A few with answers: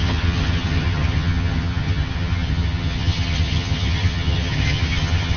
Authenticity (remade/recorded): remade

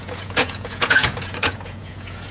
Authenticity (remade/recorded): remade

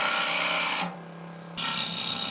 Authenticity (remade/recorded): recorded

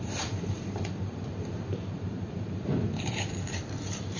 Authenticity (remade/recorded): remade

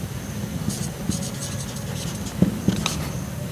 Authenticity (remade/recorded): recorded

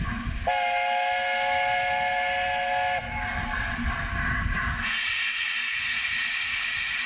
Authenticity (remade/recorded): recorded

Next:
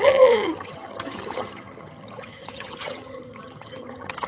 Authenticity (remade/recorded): remade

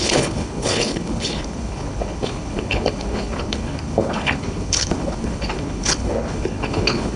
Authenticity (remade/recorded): remade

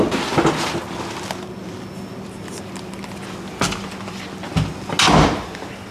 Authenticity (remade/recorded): recorded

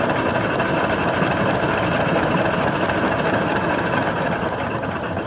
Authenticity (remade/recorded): recorded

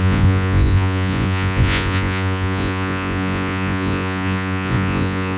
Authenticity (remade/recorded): remade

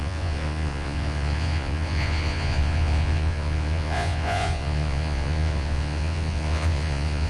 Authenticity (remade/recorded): remade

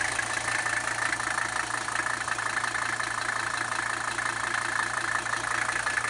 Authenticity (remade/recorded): recorded